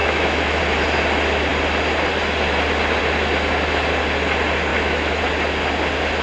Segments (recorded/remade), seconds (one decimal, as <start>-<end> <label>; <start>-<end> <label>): 0.0-0.6 remade; 0.6-4.7 recorded; 4.7-5.2 remade; 5.2-6.2 recorded